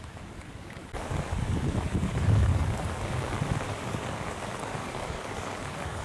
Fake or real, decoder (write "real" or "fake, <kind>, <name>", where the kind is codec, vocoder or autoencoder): fake, codec, DAC